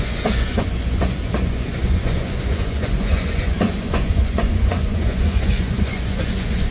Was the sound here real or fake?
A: fake